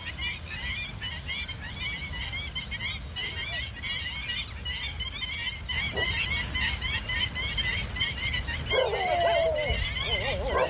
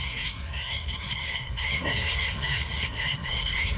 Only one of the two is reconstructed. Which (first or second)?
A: second